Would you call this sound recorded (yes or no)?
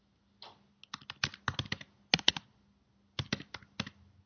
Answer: yes